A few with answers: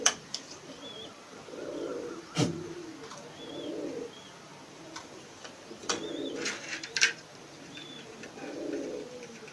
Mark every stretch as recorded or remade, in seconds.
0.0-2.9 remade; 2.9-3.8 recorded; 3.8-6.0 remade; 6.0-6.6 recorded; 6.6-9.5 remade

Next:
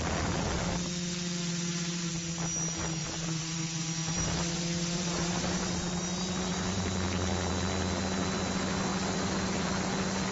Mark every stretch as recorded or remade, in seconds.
0.0-1.4 recorded; 1.4-2.1 remade; 2.1-3.0 recorded; 3.0-5.7 remade; 5.7-6.5 recorded; 6.5-7.5 remade; 7.5-10.3 recorded

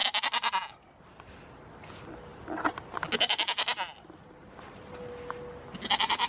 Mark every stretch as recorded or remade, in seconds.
0.0-6.3 recorded